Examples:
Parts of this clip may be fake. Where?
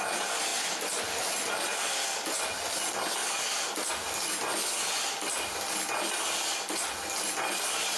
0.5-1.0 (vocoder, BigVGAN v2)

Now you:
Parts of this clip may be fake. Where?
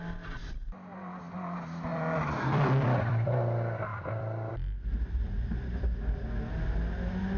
1.9-3.3 (vocoder, BigVGAN v2); 3.9-4.5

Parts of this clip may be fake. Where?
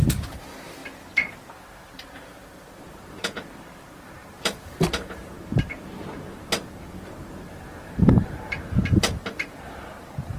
0.0-0.8 (vocoder, BigVGAN v2); 1.9-10.4